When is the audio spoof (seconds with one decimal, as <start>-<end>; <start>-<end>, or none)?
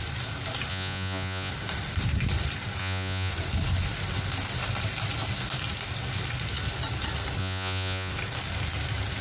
0.7-1.5; 2.8-3.3; 7.4-8.1